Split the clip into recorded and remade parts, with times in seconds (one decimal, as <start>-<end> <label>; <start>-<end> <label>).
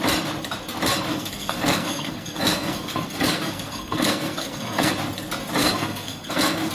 0.0-1.1 recorded; 1.1-4.9 remade; 4.9-5.6 recorded; 5.6-6.7 remade